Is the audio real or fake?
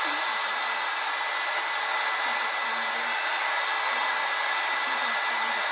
real